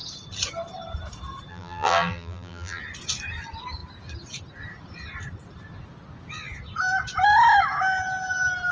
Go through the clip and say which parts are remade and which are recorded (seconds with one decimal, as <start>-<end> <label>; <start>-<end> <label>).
0.0-1.5 recorded; 1.5-2.8 remade; 2.8-8.7 recorded